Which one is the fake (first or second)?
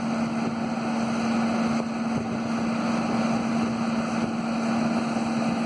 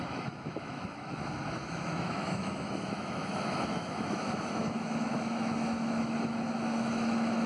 second